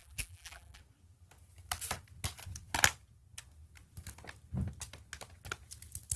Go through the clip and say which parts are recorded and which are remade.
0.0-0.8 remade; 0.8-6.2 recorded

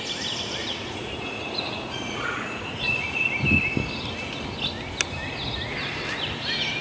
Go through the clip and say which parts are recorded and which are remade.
0.0-0.6 recorded; 0.6-3.3 remade; 3.3-6.8 recorded

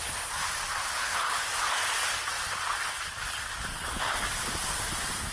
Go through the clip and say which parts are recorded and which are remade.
0.0-0.8 recorded; 0.8-1.4 remade; 1.4-3.7 recorded; 3.7-4.2 remade; 4.2-5.3 recorded